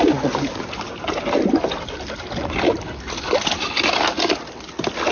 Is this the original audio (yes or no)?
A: yes